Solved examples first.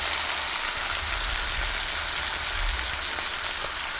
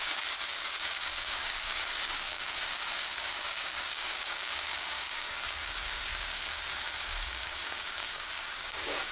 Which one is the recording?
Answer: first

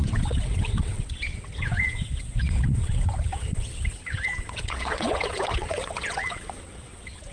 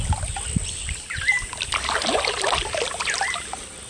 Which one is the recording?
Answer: second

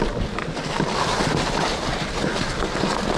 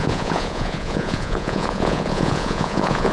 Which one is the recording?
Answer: first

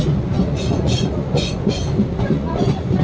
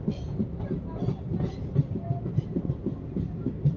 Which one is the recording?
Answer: second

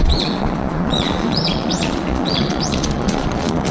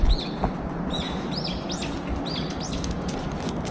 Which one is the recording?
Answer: second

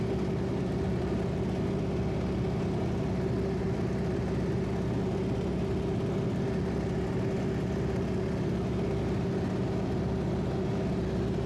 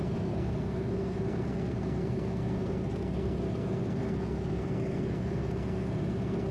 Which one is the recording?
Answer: first